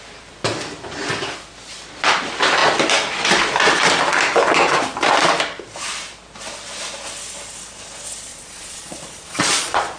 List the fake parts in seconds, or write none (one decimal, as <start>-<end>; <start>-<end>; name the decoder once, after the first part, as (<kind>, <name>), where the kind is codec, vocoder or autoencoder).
8.3-10.0 (vocoder, Vocos)